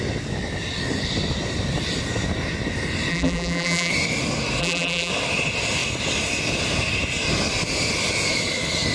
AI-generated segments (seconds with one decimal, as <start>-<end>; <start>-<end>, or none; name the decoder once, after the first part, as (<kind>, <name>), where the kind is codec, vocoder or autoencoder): 3.1-3.9 (vocoder, BigVGAN v2); 4.6-5.1